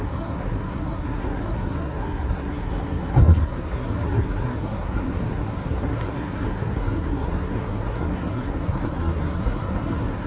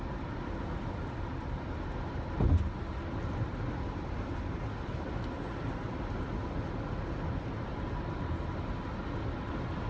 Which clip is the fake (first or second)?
first